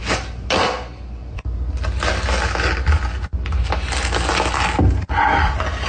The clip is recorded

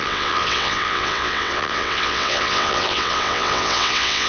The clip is remade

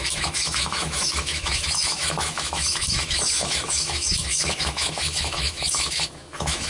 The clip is remade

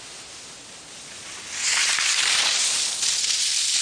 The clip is recorded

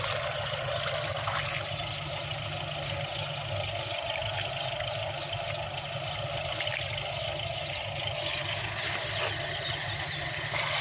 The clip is recorded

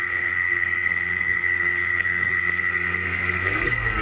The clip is remade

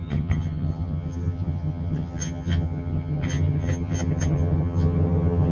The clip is remade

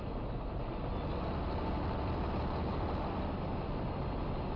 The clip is recorded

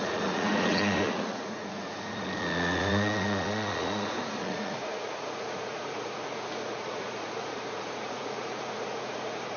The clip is remade